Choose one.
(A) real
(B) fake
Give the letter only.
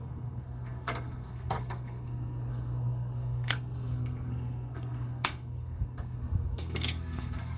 B